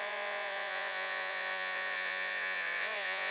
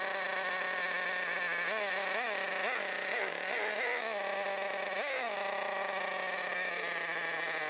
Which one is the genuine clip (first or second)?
second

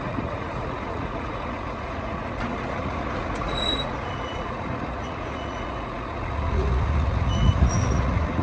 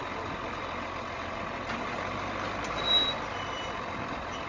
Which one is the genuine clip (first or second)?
second